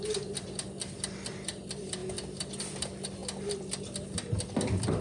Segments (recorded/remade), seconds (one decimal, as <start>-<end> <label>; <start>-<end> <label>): 0.0-5.0 recorded